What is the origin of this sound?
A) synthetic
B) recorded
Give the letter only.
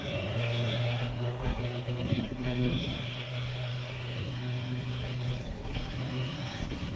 A